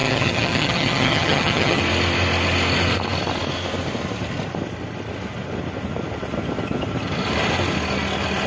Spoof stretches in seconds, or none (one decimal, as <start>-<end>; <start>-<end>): 0.0-1.8